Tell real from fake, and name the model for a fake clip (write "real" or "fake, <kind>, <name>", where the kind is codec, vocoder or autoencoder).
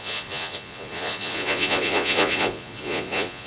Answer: fake, vocoder, Vocos